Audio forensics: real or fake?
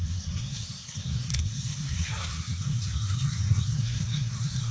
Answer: fake